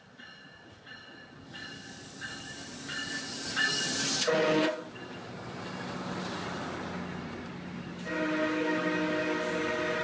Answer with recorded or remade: recorded